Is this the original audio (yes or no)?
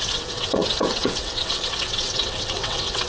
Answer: no